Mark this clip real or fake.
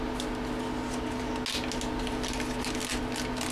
real